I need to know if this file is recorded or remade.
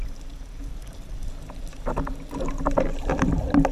remade